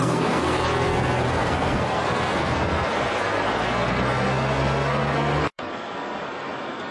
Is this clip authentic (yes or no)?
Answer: no